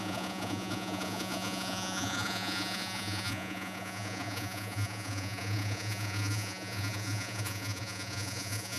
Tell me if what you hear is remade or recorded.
remade